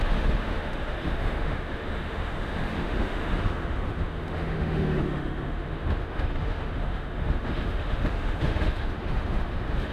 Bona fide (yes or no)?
no